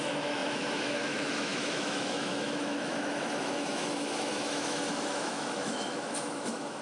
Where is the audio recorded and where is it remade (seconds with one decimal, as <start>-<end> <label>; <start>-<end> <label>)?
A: 0.0-6.8 remade